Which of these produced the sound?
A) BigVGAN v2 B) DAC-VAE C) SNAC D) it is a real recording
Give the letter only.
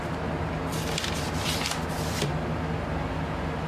D